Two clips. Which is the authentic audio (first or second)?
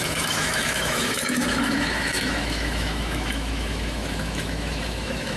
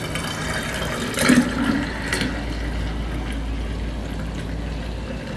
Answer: second